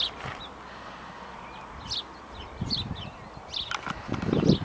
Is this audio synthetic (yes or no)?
no